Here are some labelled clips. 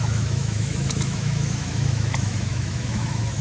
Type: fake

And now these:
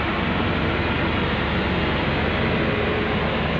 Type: real